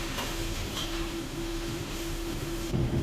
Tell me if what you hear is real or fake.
fake